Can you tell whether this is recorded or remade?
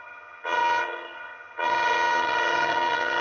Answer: remade